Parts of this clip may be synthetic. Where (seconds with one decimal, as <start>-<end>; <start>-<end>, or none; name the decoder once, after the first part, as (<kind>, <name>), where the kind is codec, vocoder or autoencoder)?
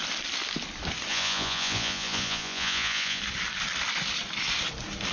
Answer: 1.1-3.2 (vocoder, Vocos)